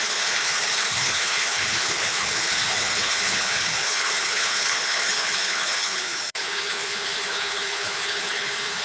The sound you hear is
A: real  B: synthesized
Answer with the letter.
B